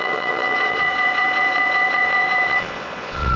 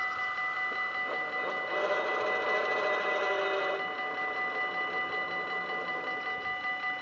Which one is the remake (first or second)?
first